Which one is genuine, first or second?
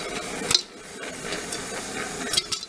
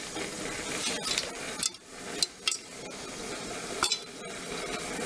first